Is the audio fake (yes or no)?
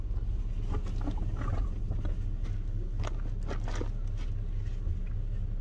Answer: no